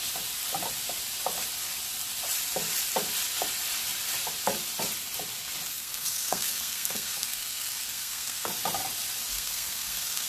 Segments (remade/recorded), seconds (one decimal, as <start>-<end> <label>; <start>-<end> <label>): 0.0-5.7 recorded; 5.7-8.5 remade; 8.5-9.3 recorded; 9.3-10.3 remade